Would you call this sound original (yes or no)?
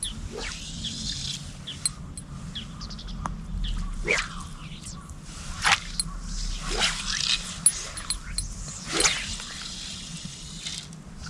yes